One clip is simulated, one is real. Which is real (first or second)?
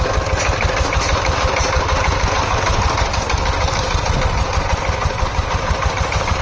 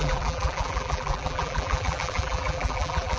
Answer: first